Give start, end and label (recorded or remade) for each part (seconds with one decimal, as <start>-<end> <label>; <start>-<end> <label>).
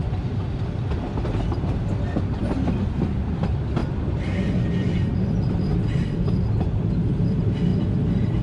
0.0-8.4 recorded